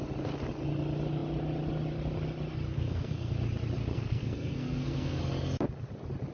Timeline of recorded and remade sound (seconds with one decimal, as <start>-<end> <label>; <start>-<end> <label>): 0.0-2.7 recorded; 2.7-3.3 remade; 3.3-3.9 recorded; 3.9-5.2 remade; 5.2-6.3 recorded